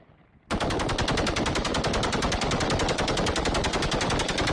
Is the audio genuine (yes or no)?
yes